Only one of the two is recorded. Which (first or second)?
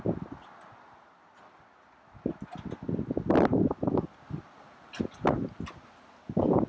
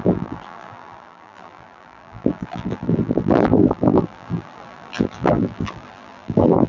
first